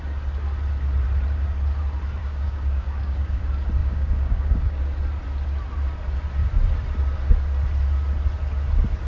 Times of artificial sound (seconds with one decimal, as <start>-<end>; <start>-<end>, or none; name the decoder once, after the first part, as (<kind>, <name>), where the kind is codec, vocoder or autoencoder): 2.2-3.4 (codec, DAC); 3.8-4.8